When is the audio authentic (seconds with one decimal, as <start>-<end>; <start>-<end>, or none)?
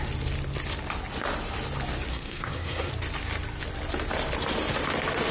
0.0-2.1; 2.9-5.3